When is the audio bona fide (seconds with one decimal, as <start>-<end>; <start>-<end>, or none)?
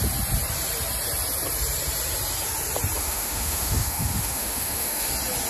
0.0-3.0; 5.1-5.5